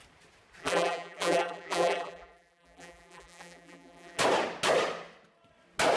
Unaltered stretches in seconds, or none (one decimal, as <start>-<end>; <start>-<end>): 0.0-0.6; 4.2-6.0